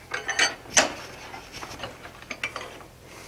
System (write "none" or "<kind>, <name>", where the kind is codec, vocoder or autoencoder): none